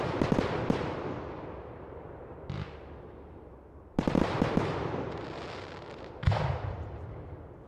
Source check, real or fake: real